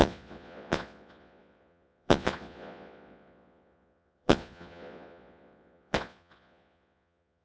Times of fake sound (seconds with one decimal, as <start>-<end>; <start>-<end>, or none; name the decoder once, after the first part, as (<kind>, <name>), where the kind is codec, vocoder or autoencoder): 0.0-7.4 (vocoder, Vocos)